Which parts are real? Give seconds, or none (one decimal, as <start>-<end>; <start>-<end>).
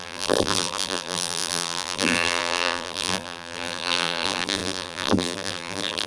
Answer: none